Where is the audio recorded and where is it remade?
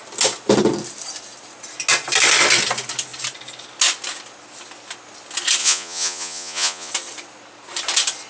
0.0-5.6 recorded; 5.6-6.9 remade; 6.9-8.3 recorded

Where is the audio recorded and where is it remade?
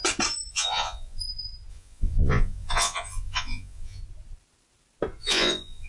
0.0-0.5 recorded; 0.5-1.2 remade; 1.2-1.7 recorded; 1.7-4.0 remade; 4.0-5.2 recorded; 5.2-5.9 remade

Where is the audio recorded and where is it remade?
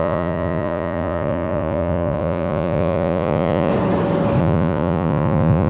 0.0-3.7 remade; 3.7-4.4 recorded; 4.4-5.7 remade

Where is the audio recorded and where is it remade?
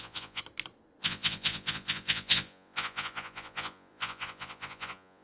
0.0-0.4 remade; 0.4-1.0 recorded; 1.0-5.2 remade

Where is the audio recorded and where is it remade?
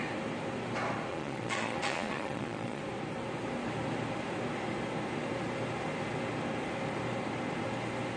0.0-1.1 recorded; 1.1-2.8 remade; 2.8-8.2 recorded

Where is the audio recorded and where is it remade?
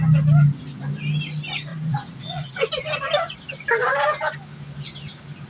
0.0-1.7 recorded; 1.7-2.7 remade; 2.7-5.5 recorded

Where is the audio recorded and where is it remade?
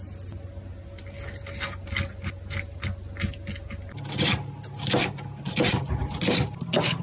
0.0-7.0 recorded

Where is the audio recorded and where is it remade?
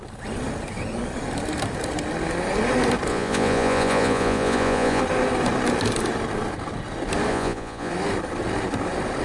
0.0-3.1 recorded; 3.1-5.0 remade; 5.0-7.3 recorded; 7.3-7.9 remade; 7.9-9.2 recorded